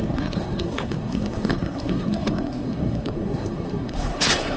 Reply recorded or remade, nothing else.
remade